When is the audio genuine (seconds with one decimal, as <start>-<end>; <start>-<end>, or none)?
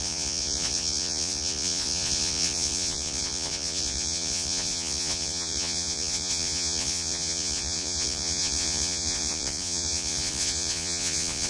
none